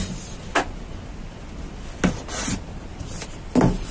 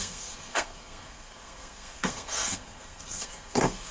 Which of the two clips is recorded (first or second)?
first